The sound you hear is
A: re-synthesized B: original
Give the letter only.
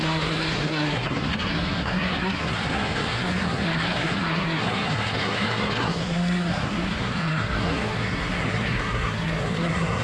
A